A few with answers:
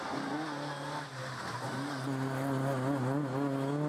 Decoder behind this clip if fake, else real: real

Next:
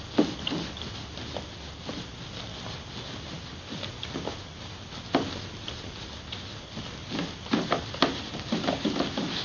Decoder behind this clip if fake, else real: real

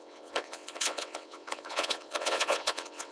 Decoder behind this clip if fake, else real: fake, vocoder, WaveNeXt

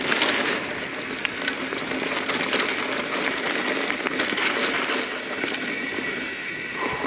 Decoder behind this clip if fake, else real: real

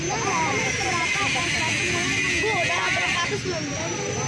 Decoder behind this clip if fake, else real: real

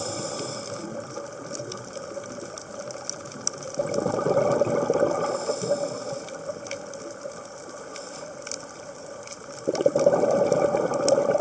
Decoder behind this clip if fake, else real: real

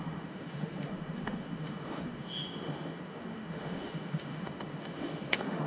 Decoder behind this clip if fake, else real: fake, autoencoder, DAC-VAE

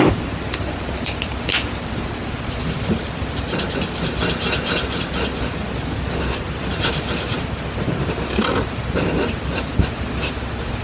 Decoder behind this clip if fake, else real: real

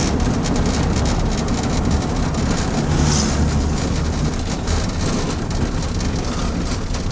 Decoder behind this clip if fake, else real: real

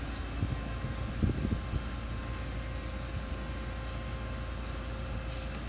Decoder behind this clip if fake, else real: real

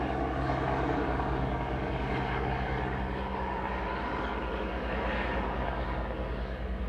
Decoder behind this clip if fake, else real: fake, codec, DAC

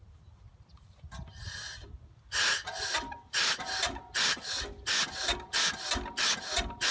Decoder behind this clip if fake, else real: real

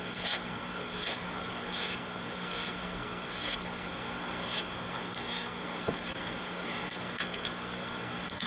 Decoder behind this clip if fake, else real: fake, codec, SNAC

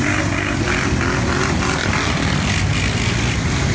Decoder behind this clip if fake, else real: real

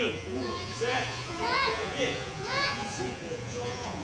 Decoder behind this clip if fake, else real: fake, vocoder, Vocos